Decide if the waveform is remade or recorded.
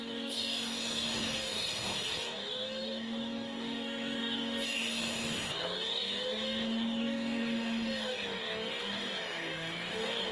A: remade